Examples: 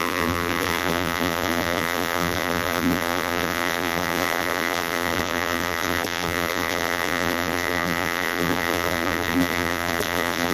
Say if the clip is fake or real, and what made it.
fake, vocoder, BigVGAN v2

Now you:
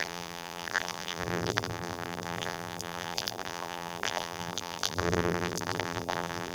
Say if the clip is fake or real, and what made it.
fake, vocoder, BigVGAN v2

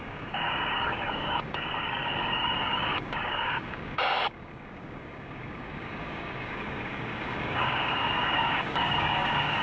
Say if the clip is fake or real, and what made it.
fake, codec, DAC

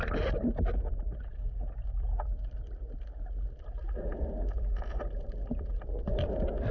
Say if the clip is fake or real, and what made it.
real